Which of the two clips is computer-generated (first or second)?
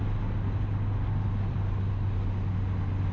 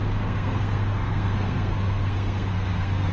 second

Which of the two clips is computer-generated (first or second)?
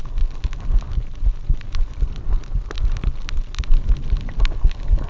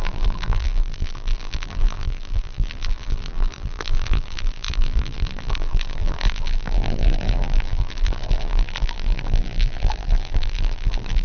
second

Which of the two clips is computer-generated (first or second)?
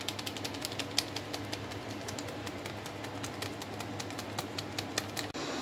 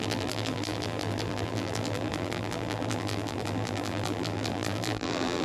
second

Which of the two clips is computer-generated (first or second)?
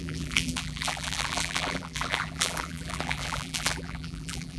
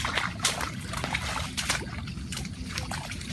first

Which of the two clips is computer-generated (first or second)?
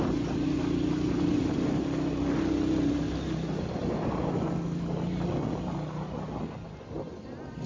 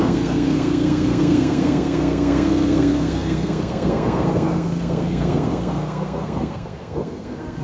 second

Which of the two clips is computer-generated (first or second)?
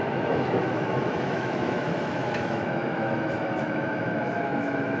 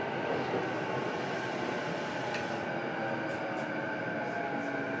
first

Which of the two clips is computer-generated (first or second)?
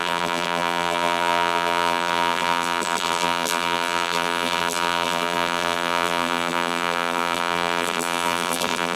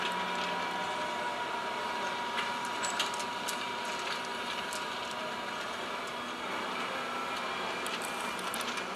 first